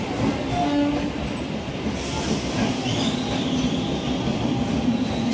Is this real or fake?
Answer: real